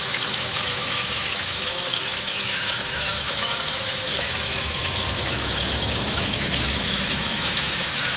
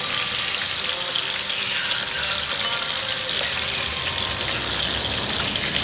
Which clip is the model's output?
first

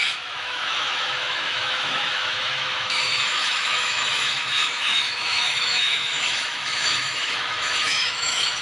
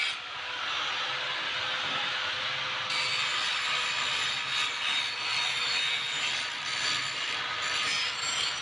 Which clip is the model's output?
first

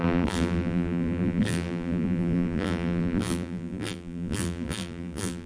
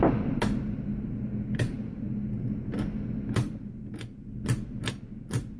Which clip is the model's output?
first